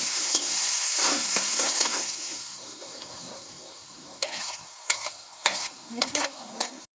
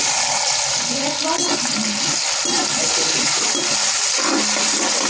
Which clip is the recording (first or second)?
second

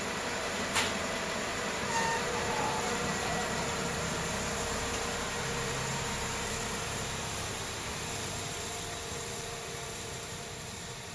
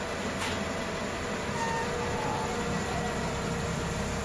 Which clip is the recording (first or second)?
second